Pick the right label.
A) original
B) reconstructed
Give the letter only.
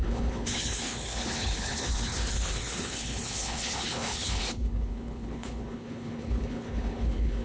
B